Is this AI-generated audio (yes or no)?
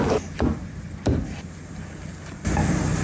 no